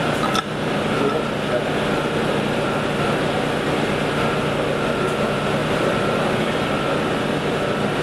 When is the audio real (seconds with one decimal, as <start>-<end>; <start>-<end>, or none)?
0.9-5.6; 7.1-8.0